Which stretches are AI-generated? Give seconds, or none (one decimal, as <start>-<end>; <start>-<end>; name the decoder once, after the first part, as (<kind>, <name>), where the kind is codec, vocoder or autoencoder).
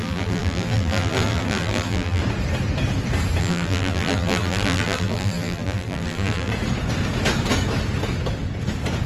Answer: 0.0-2.2 (vocoder, BigVGAN v2); 3.4-6.5